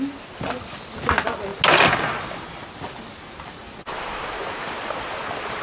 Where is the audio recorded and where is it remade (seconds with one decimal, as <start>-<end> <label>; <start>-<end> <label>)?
0.0-5.6 recorded